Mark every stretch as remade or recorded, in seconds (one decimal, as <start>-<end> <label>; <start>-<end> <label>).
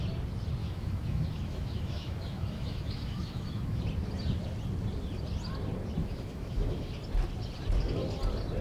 0.0-0.6 recorded; 0.6-3.8 remade; 3.8-6.0 recorded; 6.0-6.9 remade; 6.9-8.6 recorded